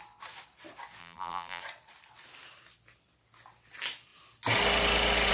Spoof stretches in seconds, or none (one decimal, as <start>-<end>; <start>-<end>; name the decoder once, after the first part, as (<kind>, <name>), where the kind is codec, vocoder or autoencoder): 1.0-1.6 (vocoder, BigVGAN v2)